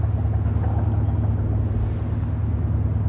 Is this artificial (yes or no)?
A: no